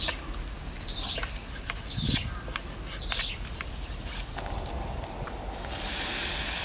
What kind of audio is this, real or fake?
real